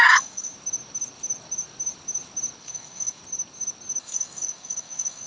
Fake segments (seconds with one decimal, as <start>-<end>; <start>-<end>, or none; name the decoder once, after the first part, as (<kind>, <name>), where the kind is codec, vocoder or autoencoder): 0.0-0.5 (codec, DAC); 2.6-3.2; 4.0-5.3